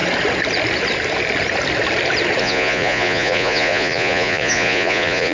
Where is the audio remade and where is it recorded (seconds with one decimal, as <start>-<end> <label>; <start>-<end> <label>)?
0.0-2.4 recorded; 2.4-5.3 remade